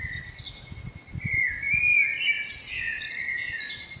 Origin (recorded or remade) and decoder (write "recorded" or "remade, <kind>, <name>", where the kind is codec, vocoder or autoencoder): recorded